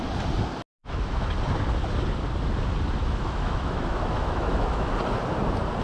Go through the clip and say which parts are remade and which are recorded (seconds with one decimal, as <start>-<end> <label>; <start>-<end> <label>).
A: 0.0-0.8 recorded; 0.8-1.3 remade; 1.3-3.0 recorded; 3.0-4.9 remade; 4.9-5.8 recorded